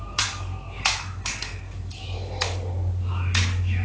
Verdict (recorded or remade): remade